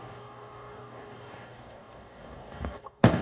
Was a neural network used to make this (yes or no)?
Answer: yes